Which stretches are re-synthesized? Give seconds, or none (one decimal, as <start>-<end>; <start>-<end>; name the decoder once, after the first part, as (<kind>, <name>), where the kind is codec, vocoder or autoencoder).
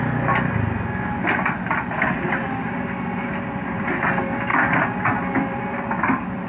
none